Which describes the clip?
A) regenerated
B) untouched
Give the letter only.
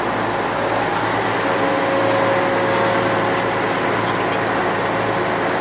B